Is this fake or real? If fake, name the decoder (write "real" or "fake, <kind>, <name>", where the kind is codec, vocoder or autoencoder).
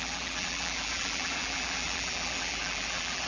fake, vocoder, BigVGAN v2